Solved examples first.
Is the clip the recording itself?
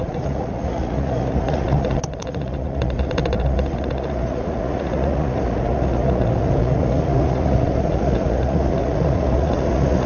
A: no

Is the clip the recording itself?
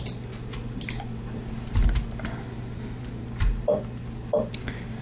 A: yes